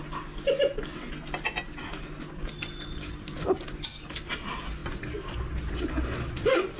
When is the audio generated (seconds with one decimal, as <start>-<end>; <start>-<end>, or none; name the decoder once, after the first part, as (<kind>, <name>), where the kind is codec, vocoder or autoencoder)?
none